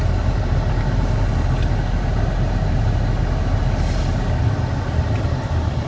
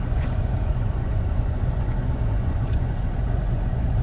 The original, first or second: first